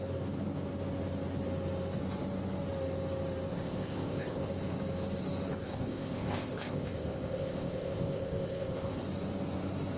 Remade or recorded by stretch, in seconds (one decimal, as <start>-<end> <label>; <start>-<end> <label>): 0.0-3.5 recorded; 3.5-4.5 remade; 4.5-5.6 recorded; 5.6-9.0 remade; 9.0-10.0 recorded